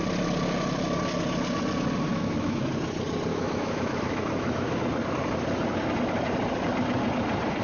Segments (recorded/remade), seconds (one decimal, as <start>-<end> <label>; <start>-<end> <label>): 0.0-2.1 recorded; 2.1-2.6 remade; 2.6-3.3 recorded; 3.3-4.8 remade; 4.8-7.6 recorded